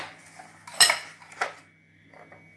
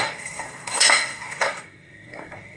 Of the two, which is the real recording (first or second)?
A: first